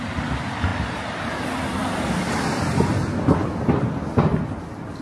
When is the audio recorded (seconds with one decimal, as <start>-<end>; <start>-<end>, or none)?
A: 0.0-0.7; 1.2-1.8